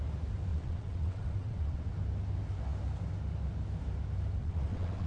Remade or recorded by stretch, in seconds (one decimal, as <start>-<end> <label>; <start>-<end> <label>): 0.0-0.5 recorded; 0.5-1.9 remade; 1.9-4.4 recorded; 4.4-5.1 remade